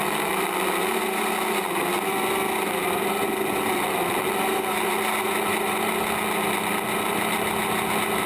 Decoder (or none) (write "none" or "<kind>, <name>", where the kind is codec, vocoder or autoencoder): none